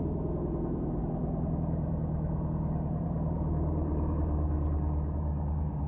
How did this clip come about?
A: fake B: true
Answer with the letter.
A